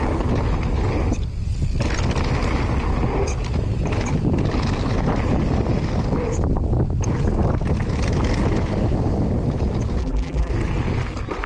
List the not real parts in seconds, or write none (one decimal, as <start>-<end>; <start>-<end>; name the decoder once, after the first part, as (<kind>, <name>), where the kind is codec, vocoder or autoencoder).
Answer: 10.0-10.5 (vocoder, BigVGAN v2)